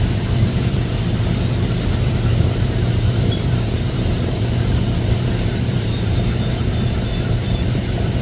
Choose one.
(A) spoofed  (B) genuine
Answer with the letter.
A